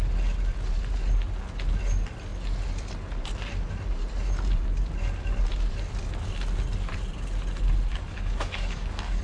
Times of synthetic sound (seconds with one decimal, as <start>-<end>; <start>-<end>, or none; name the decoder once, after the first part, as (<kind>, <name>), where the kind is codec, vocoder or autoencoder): 7.9-9.2 (codec, DAC)